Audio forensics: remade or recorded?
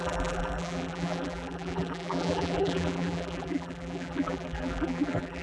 remade